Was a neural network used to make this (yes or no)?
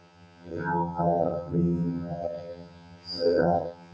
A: yes